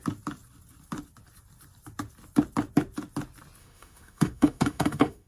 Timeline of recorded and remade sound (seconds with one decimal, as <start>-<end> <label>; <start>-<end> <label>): 0.0-3.6 recorded; 3.6-5.3 remade